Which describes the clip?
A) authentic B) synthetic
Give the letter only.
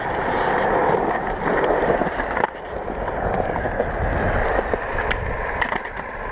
B